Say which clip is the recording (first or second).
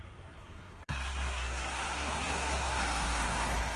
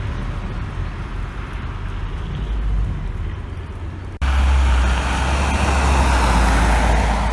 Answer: second